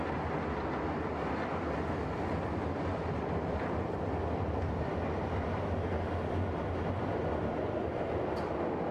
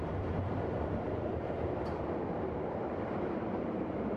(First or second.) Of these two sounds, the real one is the first